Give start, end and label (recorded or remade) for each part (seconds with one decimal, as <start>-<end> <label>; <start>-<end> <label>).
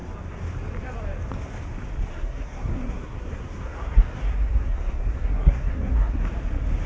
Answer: 0.0-2.1 recorded; 2.1-6.2 remade; 6.2-6.9 recorded